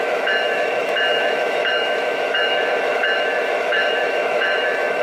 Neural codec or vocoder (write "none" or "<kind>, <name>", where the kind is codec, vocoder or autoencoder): autoencoder, DAC-VAE